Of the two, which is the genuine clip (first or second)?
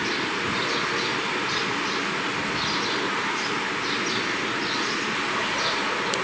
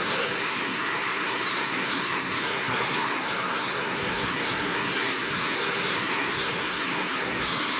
first